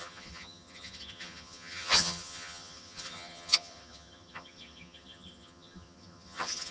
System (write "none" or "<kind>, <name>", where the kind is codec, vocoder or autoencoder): vocoder, HiFi-GAN